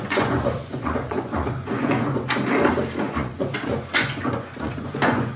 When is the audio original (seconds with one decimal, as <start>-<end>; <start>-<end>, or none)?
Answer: 2.1-3.0